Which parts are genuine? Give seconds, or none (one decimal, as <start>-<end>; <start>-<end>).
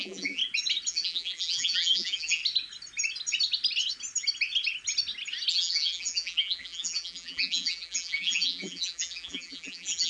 0.4-0.9; 2.4-5.5